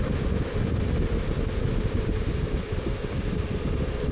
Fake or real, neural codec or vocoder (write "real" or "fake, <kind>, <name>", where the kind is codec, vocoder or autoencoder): real